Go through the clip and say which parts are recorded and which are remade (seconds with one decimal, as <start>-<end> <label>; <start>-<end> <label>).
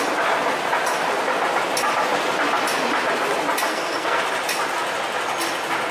0.0-3.7 recorded; 3.7-4.2 remade; 4.2-5.9 recorded